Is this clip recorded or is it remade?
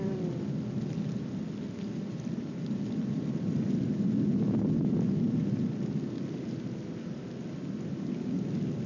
recorded